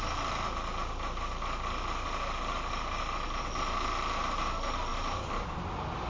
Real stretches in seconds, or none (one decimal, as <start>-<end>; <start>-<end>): 0.0-4.9